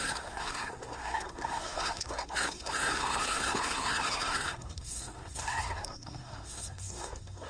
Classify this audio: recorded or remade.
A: remade